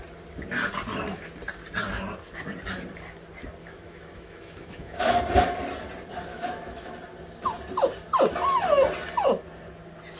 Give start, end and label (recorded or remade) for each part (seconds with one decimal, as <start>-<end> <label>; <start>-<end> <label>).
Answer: 0.0-3.6 recorded; 3.6-5.2 remade; 5.2-6.3 recorded; 6.3-6.9 remade; 6.9-10.2 recorded